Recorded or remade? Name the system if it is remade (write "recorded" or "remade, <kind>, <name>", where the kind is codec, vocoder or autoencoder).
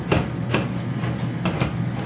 recorded